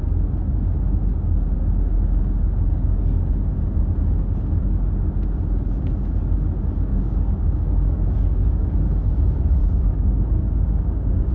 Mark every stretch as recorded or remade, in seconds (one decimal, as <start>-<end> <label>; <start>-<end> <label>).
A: 0.0-6.9 recorded; 6.9-8.7 remade; 8.7-9.6 recorded; 9.6-11.3 remade